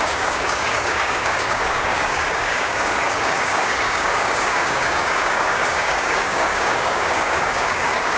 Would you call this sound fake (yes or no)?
yes